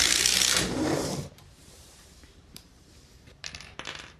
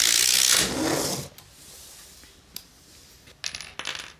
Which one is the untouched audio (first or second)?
second